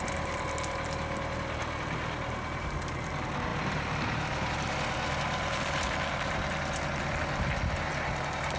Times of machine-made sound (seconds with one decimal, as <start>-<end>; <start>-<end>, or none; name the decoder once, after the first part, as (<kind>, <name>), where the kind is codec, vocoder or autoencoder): none